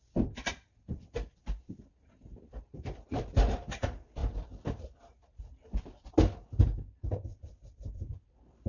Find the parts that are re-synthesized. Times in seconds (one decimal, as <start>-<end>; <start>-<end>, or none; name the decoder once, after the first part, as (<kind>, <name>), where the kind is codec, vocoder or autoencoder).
0.0-8.7 (vocoder, BigVGAN v2)